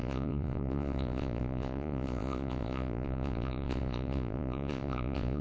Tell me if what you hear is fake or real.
fake